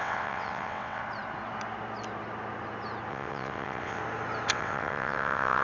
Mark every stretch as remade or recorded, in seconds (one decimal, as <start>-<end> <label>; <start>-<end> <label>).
0.0-1.0 remade; 1.0-3.1 recorded; 3.1-4.0 remade; 4.0-4.5 recorded; 4.5-5.6 remade